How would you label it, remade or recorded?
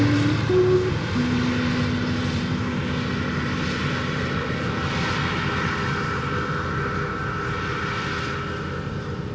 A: recorded